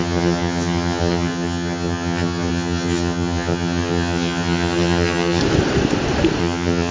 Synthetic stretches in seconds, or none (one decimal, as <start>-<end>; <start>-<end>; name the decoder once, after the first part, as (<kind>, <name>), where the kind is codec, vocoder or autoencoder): 0.0-5.4 (vocoder, HiFi-GAN); 6.4-6.9